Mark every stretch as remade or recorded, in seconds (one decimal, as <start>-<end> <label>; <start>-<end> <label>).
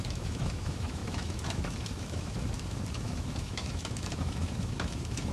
0.0-5.3 remade